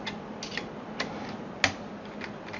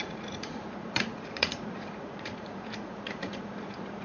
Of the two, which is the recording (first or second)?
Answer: first